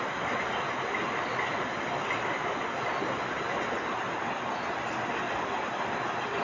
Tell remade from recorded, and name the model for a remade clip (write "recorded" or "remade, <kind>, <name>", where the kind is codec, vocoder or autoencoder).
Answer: recorded